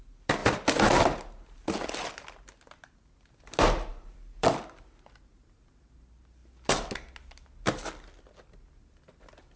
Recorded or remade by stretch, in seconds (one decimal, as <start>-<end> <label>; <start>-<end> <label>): 0.0-3.9 recorded; 3.9-4.5 remade; 4.5-9.6 recorded